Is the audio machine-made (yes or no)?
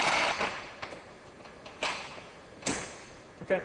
no